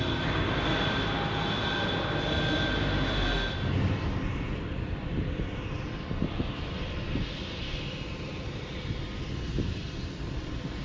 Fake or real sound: real